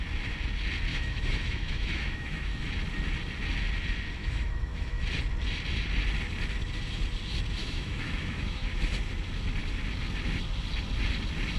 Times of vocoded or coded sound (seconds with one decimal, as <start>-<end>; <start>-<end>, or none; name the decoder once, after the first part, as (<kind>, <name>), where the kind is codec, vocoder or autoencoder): 0.9-2.6 (autoencoder, DAC-VAE); 4.2-5.0; 7.6-8.8